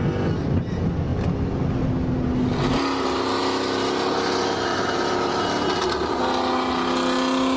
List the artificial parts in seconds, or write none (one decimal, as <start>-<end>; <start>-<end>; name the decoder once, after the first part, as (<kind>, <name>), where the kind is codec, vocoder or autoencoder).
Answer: 4.7-5.4 (vocoder, BigVGAN v2)